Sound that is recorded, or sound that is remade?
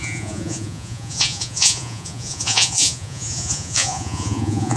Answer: remade